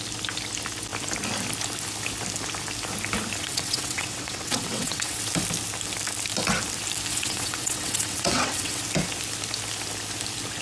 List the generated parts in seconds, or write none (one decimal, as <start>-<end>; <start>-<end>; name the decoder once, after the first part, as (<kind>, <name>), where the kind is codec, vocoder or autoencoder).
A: 3.4-5.2 (vocoder, WaveNeXt); 7.1-8.8